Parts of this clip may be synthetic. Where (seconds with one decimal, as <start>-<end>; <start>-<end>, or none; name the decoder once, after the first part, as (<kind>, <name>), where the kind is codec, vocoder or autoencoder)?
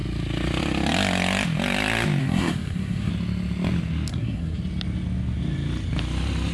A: 2.2-3.1 (codec, SNAC); 4.1-4.6